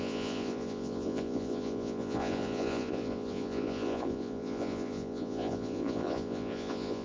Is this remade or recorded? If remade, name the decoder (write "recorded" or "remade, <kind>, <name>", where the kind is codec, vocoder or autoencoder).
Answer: remade, vocoder, Vocos